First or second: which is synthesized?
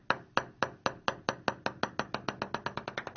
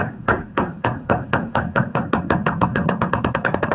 second